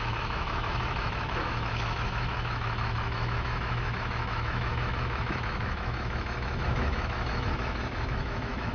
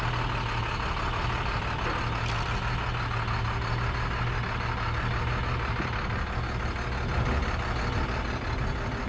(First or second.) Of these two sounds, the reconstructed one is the first